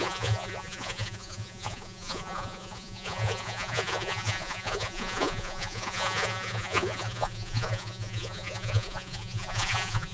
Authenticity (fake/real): fake